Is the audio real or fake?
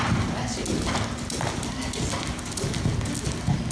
real